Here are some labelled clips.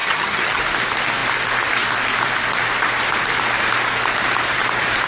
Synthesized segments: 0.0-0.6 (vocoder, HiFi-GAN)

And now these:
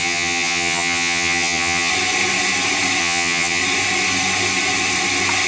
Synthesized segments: 0.0-1.9 (vocoder, HiFi-GAN); 3.0-3.6

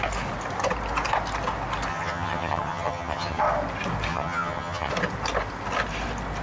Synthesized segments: 1.9-3.4 (vocoder, HiFi-GAN); 4.1-4.9

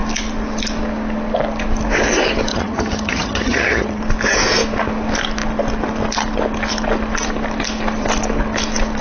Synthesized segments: 2.5-4.0 (vocoder, HiFi-GAN)

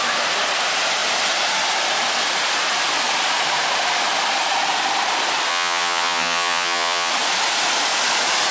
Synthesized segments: 5.5-7.1 (vocoder, HiFi-GAN)

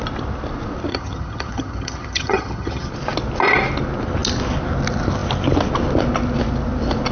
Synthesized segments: 0.9-2.9 (vocoder, HiFi-GAN)